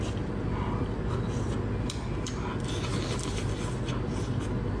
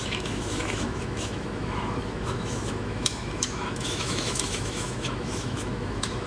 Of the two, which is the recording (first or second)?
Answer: first